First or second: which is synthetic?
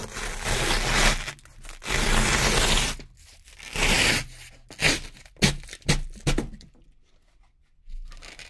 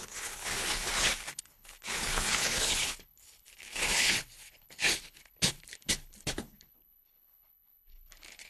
second